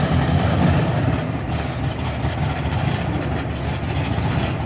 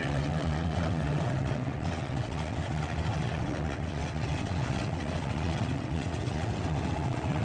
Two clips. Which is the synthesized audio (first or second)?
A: second